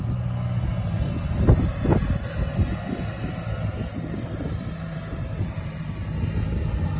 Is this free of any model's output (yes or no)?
yes